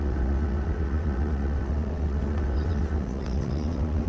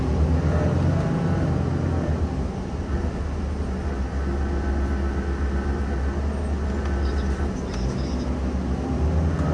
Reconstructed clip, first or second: first